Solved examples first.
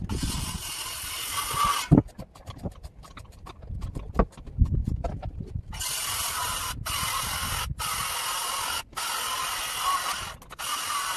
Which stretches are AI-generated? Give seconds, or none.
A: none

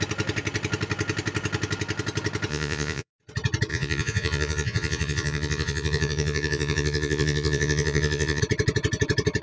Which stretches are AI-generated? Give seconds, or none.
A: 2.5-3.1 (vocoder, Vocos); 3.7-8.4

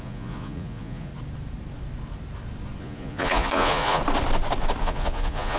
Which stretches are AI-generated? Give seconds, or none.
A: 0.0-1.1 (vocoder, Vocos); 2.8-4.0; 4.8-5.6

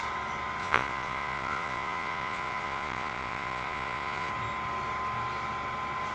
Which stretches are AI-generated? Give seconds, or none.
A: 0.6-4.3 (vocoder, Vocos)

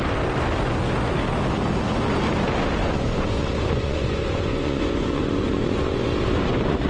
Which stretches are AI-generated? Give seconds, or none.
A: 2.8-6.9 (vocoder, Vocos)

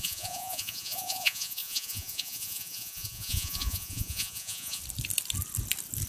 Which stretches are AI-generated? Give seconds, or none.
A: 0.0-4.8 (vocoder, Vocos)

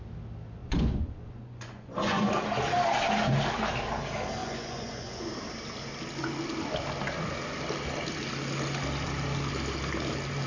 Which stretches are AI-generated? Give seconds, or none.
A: 0.6-2.3 (vocoder, Vocos); 4.4-5.3